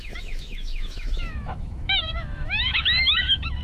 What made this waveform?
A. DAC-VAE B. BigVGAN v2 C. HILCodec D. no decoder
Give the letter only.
A